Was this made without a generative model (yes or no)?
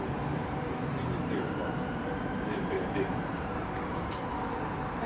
no